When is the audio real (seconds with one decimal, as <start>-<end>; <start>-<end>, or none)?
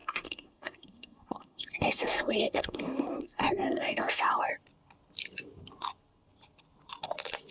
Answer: 4.4-7.5